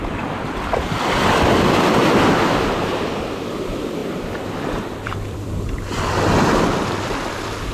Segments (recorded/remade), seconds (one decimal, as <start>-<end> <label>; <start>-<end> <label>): 0.0-2.0 remade; 2.0-3.0 recorded; 3.0-7.7 remade